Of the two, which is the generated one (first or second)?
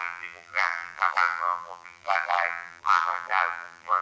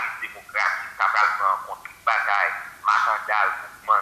first